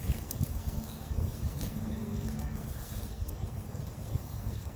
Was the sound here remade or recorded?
remade